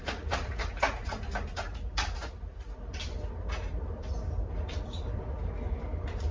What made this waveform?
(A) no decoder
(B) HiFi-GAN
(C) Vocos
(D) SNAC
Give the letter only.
A